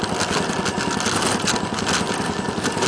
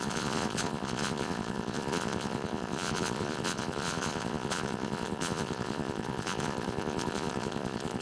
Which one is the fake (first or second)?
second